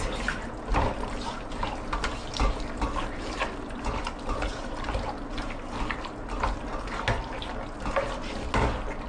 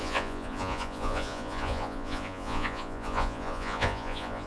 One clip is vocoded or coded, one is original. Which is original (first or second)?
first